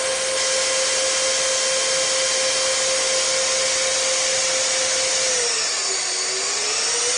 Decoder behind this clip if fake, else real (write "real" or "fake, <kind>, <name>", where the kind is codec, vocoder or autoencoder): real